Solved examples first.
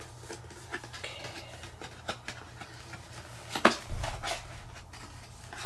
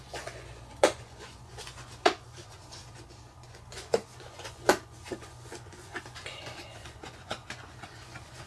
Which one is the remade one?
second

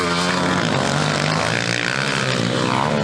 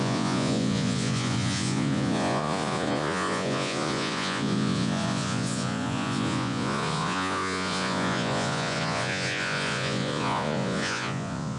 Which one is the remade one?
second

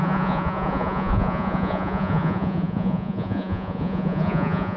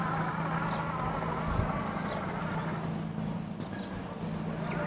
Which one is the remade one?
first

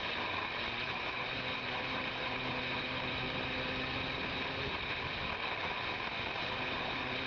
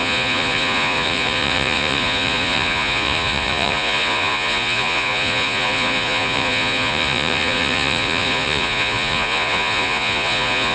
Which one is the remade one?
second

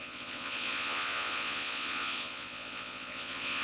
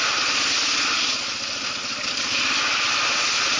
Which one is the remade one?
first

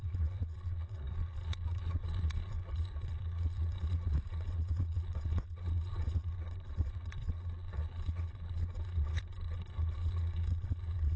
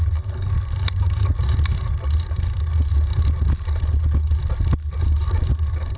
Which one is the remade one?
first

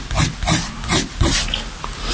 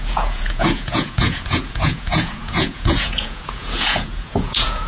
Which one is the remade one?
second